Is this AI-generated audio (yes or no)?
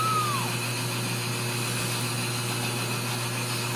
no